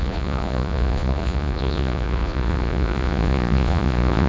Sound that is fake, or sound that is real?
fake